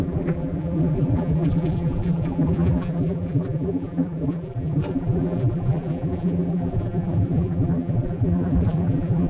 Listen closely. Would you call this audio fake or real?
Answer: fake